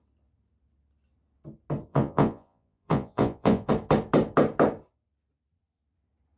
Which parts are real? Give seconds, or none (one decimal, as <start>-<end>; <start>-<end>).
0.0-1.9; 3.7-6.4